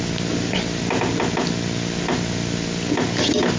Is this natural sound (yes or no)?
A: yes